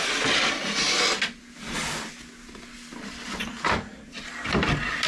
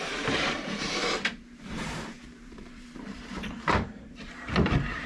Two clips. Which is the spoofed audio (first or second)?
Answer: second